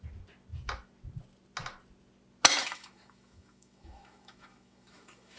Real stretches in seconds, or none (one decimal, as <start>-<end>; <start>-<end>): 0.0-2.6